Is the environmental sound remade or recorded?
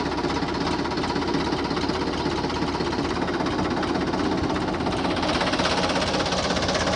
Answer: recorded